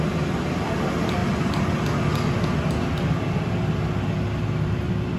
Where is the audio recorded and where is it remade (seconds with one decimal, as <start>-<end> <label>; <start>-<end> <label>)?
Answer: 0.0-5.2 recorded